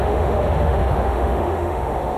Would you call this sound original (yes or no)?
no